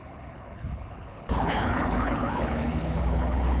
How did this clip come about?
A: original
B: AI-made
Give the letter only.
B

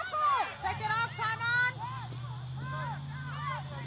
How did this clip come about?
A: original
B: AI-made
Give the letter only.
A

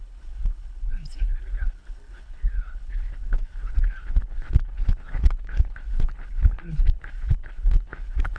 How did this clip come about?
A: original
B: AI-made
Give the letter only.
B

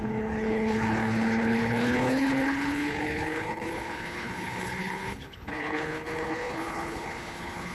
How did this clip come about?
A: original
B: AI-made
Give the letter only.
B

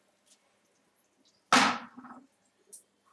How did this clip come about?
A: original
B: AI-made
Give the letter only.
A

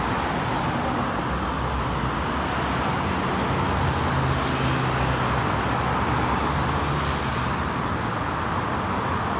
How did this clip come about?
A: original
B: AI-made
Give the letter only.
A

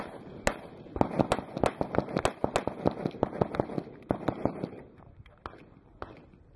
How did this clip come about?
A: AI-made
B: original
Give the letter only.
B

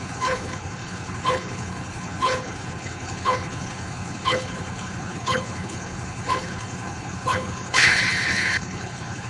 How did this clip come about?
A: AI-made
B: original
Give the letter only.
A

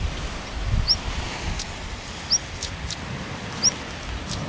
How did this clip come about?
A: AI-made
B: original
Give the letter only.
B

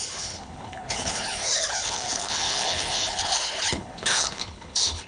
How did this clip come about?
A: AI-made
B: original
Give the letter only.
A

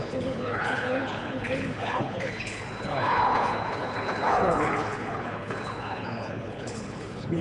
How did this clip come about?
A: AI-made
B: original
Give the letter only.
A